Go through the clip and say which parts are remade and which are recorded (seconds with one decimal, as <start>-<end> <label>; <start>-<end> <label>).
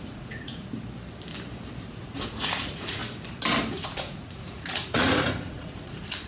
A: 0.0-0.7 remade; 0.7-1.9 recorded; 1.9-3.0 remade; 3.0-3.7 recorded; 3.7-6.3 remade